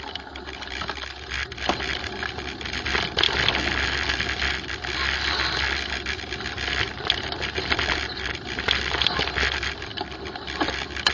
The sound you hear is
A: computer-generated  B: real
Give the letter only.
B